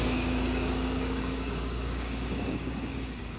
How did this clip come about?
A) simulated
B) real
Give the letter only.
A